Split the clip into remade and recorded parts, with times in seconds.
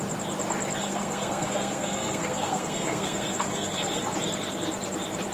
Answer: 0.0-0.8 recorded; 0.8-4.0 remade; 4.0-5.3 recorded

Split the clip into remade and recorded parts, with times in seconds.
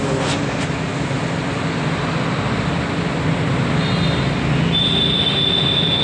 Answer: 0.0-6.0 recorded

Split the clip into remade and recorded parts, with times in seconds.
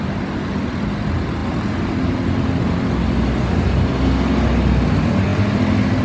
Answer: 0.0-6.0 recorded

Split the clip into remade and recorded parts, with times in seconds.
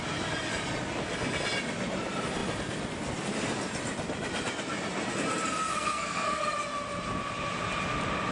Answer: 0.0-5.6 recorded; 5.6-6.4 remade; 6.4-8.3 recorded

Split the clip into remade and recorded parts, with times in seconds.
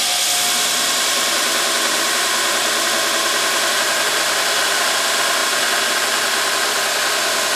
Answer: 0.0-7.6 recorded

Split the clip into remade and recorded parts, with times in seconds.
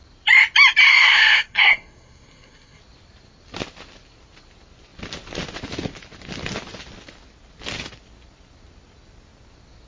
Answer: 0.0-0.9 recorded; 0.9-2.8 remade; 2.8-9.9 recorded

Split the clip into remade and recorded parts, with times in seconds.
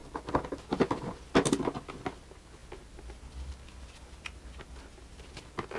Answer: 0.0-5.8 recorded